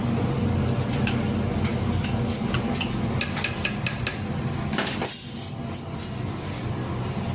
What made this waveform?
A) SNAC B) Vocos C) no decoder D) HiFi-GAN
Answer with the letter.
C